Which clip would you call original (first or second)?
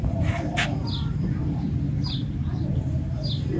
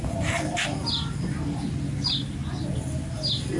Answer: second